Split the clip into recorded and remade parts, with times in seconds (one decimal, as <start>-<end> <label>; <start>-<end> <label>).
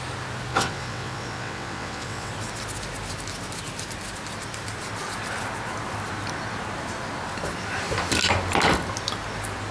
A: 0.0-0.5 recorded; 0.5-2.3 remade; 2.3-9.7 recorded